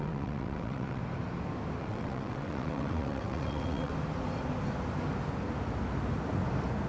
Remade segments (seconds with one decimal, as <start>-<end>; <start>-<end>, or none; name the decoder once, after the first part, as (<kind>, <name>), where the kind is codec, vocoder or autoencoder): 0.0-1.0 (vocoder, WaveNeXt); 1.8-3.9